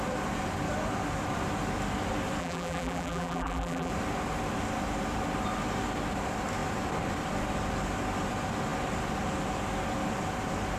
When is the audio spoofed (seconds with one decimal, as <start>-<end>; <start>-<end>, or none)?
2.4-3.9

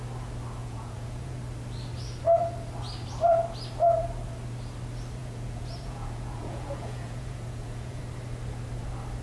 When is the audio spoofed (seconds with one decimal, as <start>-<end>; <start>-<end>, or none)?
0.6-1.4; 5.2-8.0

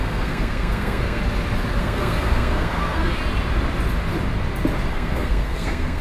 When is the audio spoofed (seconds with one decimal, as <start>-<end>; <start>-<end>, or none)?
0.0-1.2; 1.8-3.2; 4.9-6.0

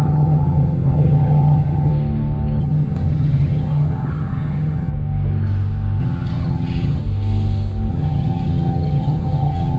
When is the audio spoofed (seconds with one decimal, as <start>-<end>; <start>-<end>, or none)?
0.0-1.9; 2.6-4.9; 6.0-7.0; 7.9-9.8

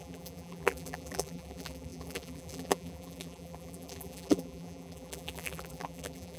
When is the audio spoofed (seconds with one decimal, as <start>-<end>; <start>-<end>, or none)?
0.0-6.4

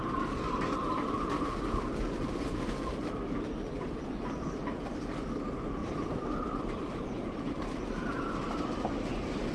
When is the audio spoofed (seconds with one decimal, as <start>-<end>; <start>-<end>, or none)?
5.8-9.5

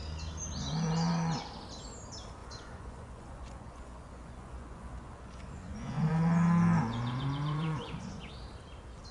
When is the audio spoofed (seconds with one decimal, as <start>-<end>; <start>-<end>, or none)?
2.4-6.1; 6.8-8.3